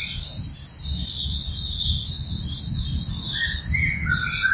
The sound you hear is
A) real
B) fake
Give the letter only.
A